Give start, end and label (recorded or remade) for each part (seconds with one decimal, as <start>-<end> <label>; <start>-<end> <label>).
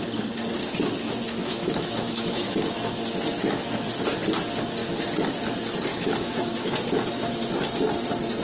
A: 0.0-0.6 recorded; 0.6-3.9 remade; 3.9-5.9 recorded; 5.9-6.7 remade; 6.7-8.4 recorded